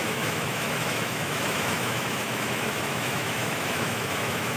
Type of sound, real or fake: fake